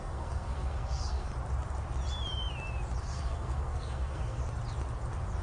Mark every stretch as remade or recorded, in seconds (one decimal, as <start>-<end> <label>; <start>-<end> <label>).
0.0-1.3 remade; 1.3-3.0 recorded; 3.0-4.4 remade; 4.4-5.4 recorded